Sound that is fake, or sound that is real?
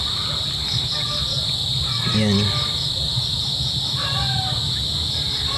real